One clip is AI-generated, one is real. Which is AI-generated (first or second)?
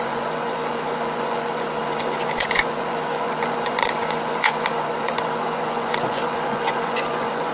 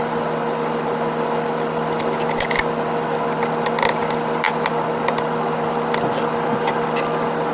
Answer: first